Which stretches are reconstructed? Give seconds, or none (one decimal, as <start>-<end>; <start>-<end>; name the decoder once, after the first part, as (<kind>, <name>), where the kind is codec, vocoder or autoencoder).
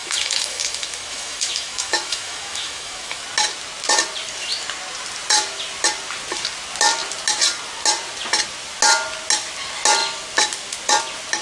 0.0-3.2 (autoencoder, DAC-VAE)